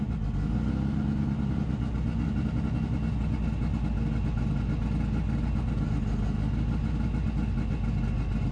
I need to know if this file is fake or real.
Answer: real